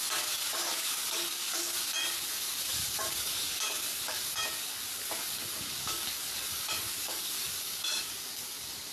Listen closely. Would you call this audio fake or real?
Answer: fake